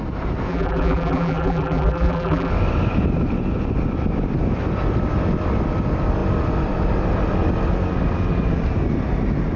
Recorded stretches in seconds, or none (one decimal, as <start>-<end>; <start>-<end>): 0.0-0.5; 2.5-9.6